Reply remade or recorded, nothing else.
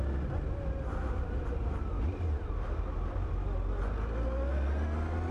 recorded